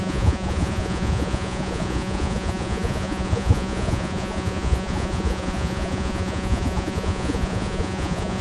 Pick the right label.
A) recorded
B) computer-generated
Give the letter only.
B